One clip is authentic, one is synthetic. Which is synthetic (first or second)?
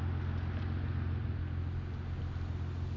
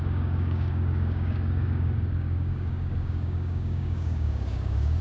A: second